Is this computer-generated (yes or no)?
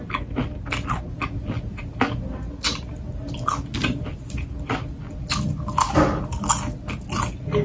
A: no